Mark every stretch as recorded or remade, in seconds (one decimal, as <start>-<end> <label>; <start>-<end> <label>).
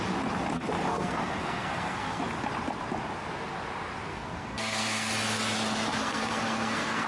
0.0-0.9 recorded; 0.9-2.2 remade; 2.2-4.1 recorded; 4.1-5.1 remade; 5.1-6.0 recorded; 6.0-7.1 remade